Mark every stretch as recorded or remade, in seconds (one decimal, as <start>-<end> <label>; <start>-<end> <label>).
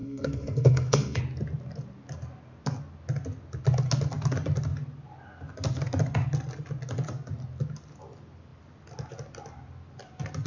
0.0-1.2 remade; 1.2-10.5 recorded